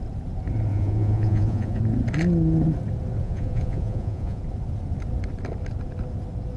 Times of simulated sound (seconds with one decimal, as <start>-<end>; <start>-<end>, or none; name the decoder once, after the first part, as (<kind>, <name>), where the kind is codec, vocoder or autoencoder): 0.7-1.8 (vocoder, Vocos); 3.2-4.4